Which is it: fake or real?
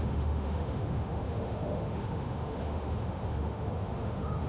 fake